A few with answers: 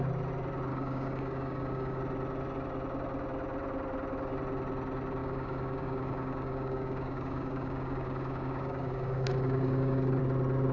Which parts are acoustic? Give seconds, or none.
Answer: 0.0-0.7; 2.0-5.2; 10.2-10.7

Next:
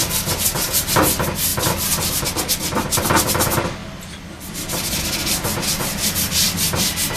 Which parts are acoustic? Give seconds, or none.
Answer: 0.0-7.2

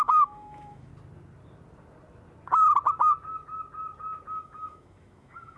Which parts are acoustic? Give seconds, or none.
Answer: 0.9-4.3

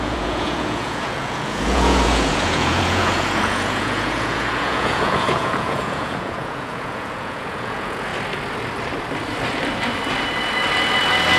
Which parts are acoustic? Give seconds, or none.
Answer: 8.1-11.4

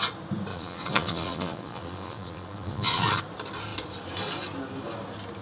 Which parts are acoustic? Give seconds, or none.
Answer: 0.0-0.5; 3.2-5.4

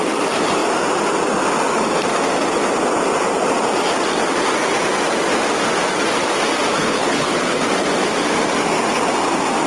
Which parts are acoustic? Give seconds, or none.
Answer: 0.0-6.8; 7.5-9.7

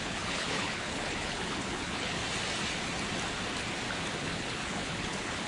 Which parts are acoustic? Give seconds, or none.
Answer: 2.2-4.2

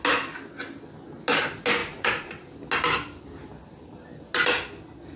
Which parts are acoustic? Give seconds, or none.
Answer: 0.0-1.8; 2.3-5.2